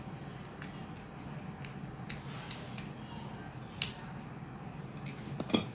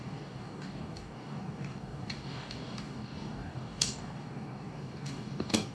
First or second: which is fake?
second